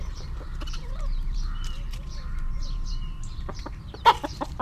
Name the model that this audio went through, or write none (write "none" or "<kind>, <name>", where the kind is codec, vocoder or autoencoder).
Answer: vocoder, BigVGAN v2